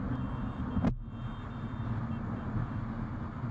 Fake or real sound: real